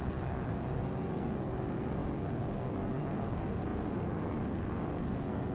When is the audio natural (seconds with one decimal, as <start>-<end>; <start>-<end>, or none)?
none